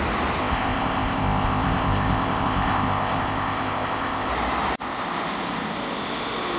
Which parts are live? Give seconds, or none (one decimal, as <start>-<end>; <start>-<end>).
0.0-0.4; 4.3-6.6